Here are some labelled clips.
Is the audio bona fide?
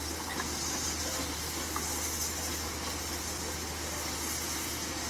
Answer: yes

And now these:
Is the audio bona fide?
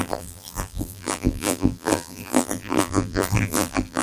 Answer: no